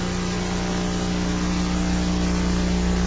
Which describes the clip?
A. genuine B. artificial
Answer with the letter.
A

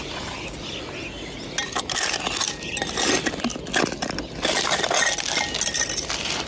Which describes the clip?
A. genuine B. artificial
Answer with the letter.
A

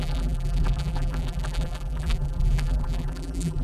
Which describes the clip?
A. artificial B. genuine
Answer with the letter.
A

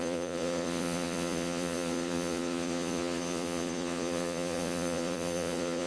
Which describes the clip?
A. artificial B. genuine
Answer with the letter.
A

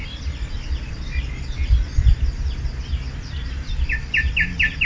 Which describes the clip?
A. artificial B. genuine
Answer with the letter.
B